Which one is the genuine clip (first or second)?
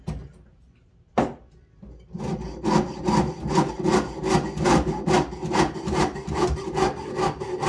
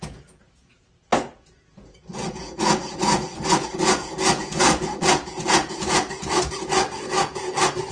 first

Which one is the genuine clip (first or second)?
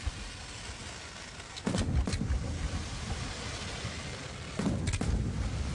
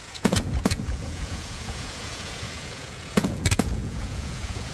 first